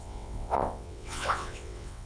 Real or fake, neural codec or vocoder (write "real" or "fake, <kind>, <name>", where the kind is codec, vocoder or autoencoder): fake, vocoder, WaveNeXt